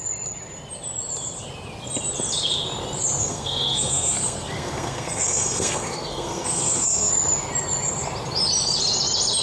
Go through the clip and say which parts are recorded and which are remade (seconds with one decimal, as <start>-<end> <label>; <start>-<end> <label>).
0.0-3.2 recorded; 3.2-7.1 remade; 7.1-9.4 recorded